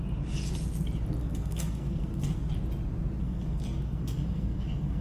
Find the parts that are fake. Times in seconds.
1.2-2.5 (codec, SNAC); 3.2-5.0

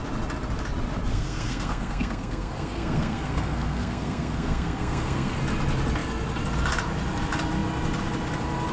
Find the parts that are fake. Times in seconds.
1.1-5.4 (codec, SNAC)

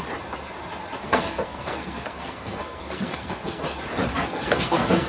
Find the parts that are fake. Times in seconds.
1.0-3.6 (codec, SNAC); 4.1-5.1

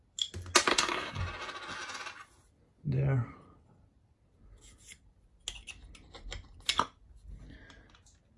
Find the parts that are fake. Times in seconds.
0.7-1.2 (codec, SNAC)

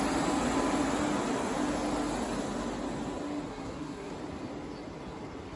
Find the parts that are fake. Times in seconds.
3.5-4.1 (codec, SNAC)